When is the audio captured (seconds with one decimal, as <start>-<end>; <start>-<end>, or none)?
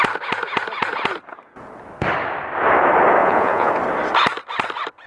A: 0.0-3.2; 3.7-5.1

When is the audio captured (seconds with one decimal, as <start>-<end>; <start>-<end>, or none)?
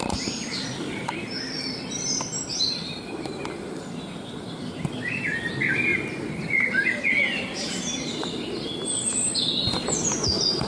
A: 0.0-0.4; 4.7-5.9; 9.5-10.7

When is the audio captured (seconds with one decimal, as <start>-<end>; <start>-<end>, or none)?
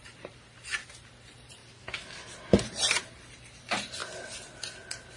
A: 1.6-2.6; 4.0-5.2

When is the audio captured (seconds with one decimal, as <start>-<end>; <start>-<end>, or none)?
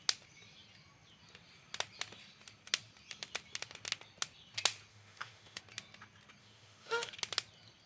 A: 0.0-4.9; 5.6-6.4; 7.1-7.9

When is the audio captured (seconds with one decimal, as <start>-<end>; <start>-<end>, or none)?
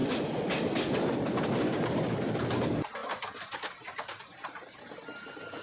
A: 0.0-5.6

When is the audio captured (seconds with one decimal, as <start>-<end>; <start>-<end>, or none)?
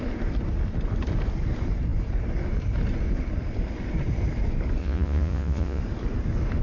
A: 0.0-4.8; 5.8-6.6